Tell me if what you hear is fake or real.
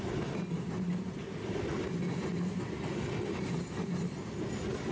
real